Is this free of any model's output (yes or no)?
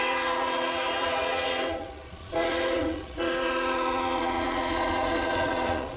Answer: no